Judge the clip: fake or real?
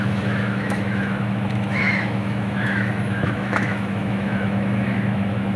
fake